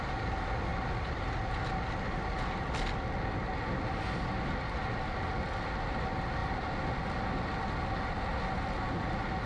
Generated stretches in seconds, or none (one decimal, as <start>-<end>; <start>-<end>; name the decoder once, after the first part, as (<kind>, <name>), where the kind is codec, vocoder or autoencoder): none

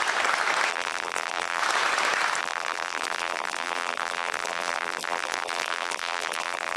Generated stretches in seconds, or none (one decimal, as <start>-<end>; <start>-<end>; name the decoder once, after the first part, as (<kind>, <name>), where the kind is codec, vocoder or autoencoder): 0.7-1.6 (vocoder, BigVGAN v2); 2.4-6.8

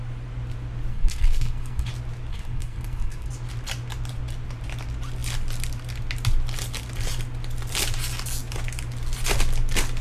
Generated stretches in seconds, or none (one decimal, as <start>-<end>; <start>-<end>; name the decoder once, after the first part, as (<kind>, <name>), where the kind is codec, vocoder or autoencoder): 0.9-1.9 (codec, SNAC); 2.3-3.3